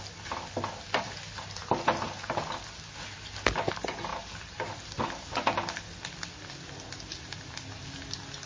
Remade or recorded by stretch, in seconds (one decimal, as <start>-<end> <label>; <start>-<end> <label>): 0.0-1.6 recorded; 1.6-2.2 remade; 2.2-8.5 recorded